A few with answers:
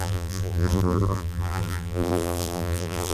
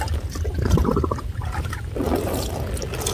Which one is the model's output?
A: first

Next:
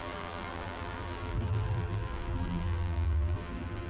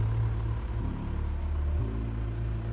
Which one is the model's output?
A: first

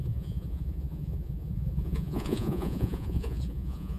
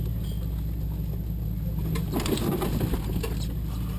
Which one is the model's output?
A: first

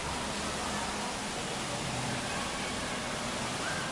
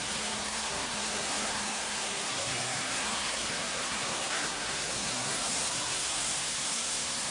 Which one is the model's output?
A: second